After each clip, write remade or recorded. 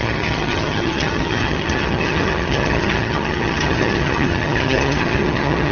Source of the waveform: remade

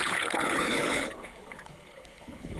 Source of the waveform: remade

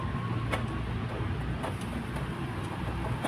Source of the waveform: recorded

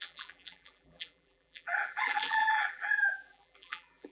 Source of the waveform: remade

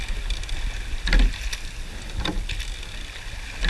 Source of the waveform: recorded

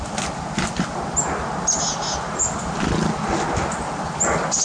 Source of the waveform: recorded